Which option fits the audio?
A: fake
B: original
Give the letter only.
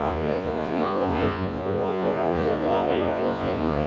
A